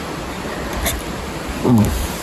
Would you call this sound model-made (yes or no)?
yes